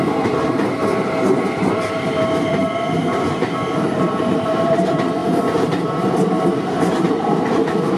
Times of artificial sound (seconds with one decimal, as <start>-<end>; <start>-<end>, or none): 0.0-8.0